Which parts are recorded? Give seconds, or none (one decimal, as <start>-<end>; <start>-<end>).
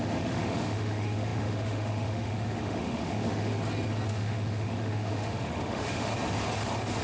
3.5-4.1; 6.1-7.0